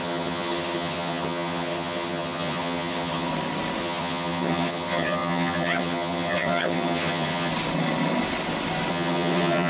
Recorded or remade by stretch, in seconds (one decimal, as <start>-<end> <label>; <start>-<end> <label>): 0.0-3.3 remade; 3.3-3.8 recorded; 3.8-7.5 remade; 7.5-8.9 recorded; 8.9-9.7 remade